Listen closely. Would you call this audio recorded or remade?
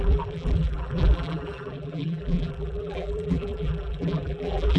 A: remade